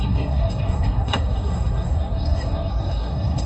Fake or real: fake